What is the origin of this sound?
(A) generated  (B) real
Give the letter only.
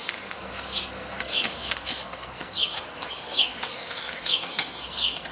A